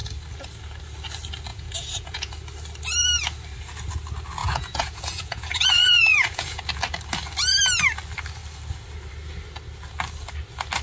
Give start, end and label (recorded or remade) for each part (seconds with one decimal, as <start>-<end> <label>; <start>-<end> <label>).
0.0-1.5 recorded; 1.5-2.3 remade; 2.3-4.4 recorded; 4.4-6.6 remade; 6.6-10.8 recorded